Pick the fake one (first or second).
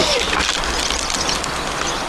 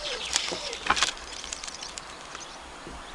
second